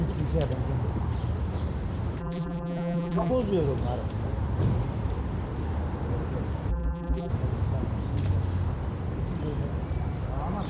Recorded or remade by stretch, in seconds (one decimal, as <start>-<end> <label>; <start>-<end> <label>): 0.0-2.2 recorded; 2.2-3.3 remade; 3.3-6.7 recorded; 6.7-7.3 remade; 7.3-10.7 recorded